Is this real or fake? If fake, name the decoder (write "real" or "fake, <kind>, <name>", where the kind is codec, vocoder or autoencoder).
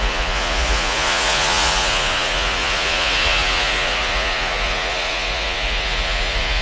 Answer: fake, vocoder, Vocos